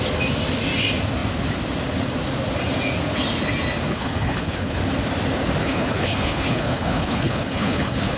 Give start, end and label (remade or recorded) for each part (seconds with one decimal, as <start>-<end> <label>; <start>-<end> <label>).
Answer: 0.0-3.9 recorded; 3.9-4.8 remade; 4.8-5.6 recorded; 5.6-8.2 remade